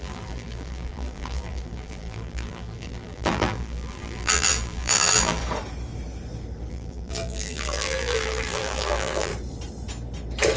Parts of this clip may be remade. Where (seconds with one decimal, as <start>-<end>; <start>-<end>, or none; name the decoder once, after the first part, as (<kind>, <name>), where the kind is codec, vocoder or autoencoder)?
0.0-5.4 (vocoder, BigVGAN v2); 6.7-9.3